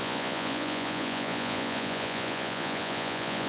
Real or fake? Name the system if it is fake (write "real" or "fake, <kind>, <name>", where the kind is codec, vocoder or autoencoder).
fake, vocoder, Vocos